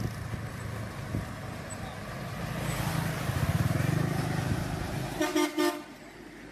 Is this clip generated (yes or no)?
no